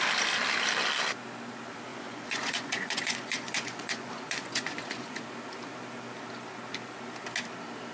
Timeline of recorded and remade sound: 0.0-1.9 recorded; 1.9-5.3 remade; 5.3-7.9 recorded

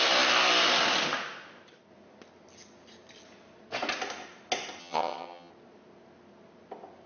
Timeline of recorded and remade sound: 0.0-4.8 recorded; 4.8-5.5 remade; 5.5-7.1 recorded

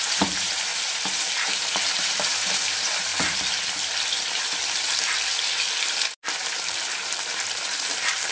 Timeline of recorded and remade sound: 0.0-3.1 remade; 3.1-6.3 recorded; 6.3-8.3 remade